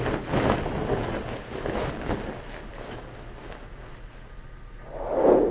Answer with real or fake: real